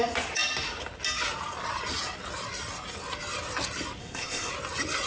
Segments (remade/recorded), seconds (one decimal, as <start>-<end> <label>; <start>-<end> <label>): 0.0-4.0 recorded; 4.0-4.5 remade; 4.5-5.1 recorded